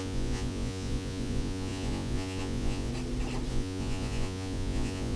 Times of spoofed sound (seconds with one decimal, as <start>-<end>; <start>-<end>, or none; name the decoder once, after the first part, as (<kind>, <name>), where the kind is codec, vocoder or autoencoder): 0.0-2.9 (vocoder, Vocos); 3.5-5.2